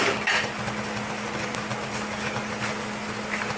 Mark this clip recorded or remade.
recorded